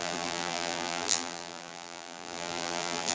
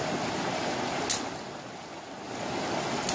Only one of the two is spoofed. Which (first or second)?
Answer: first